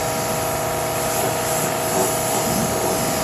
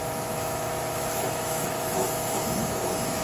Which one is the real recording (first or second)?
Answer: first